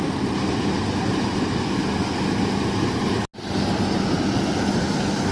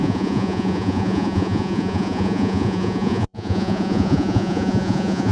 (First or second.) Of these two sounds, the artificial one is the second